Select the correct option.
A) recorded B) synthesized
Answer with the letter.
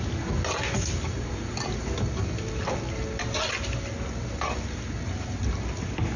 A